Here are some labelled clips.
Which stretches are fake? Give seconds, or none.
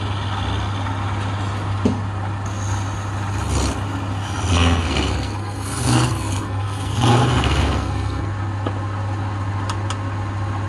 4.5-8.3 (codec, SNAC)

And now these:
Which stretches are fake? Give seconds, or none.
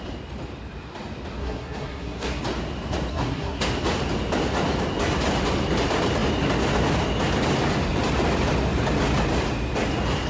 1.4-2.4 (codec, SNAC); 3.1-3.6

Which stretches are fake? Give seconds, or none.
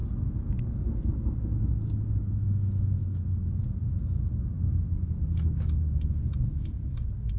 none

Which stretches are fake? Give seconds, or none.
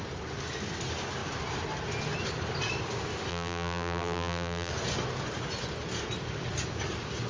3.3-4.7 (vocoder, BigVGAN v2)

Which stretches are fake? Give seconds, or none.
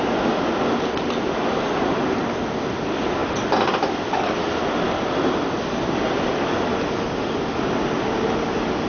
none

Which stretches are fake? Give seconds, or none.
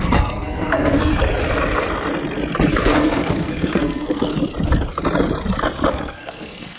0.0-1.1 (codec, SNAC); 2.8-4.3; 5.9-6.8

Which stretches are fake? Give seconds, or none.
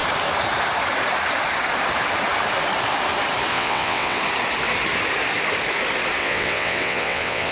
3.5-4.2 (vocoder, WaveNeXt); 6.2-7.5